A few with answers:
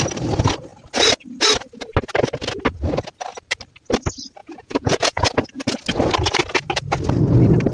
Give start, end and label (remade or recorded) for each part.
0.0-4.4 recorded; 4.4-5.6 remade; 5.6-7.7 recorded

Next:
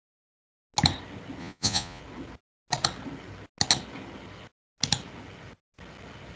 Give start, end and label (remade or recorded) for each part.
0.0-1.4 recorded; 1.4-2.0 remade; 2.0-6.4 recorded

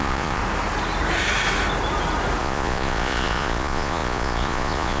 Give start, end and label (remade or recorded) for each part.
0.0-0.4 remade; 0.4-2.4 recorded; 2.4-5.0 remade